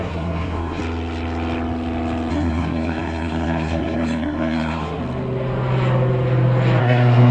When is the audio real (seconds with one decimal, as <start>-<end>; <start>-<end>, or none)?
0.8-2.3; 5.0-6.8